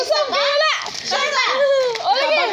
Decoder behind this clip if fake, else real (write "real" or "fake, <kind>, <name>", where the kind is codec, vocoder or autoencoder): real